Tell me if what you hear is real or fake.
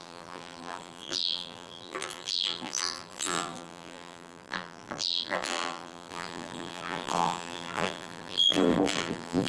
fake